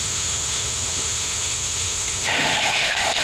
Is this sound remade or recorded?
remade